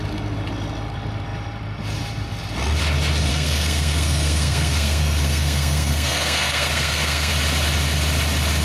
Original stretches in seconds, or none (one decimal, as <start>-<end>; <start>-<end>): 0.0-3.3; 7.3-8.6